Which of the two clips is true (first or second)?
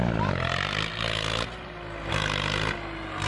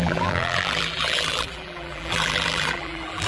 first